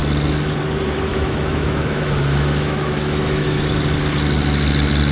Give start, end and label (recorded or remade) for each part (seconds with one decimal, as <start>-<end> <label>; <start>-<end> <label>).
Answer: 0.0-1.1 recorded; 1.1-3.7 remade; 3.7-5.1 recorded